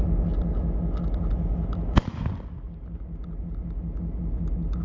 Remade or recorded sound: recorded